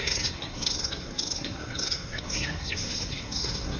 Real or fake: fake